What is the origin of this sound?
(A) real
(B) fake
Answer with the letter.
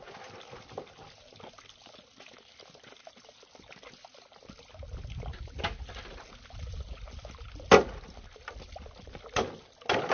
A